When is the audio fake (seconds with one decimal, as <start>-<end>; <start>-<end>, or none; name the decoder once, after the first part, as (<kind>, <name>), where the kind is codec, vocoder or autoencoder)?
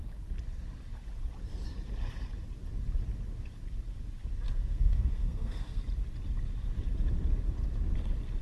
4.5-5.8 (codec, SNAC)